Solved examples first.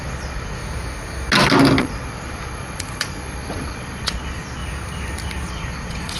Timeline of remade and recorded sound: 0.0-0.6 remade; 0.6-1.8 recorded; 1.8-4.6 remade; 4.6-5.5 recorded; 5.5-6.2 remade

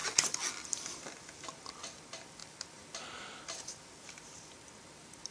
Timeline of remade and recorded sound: 0.0-2.4 recorded; 2.4-3.2 remade; 3.2-5.3 recorded

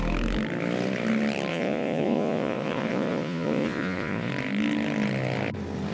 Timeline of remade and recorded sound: 0.0-1.5 recorded; 1.5-4.3 remade; 4.3-5.9 recorded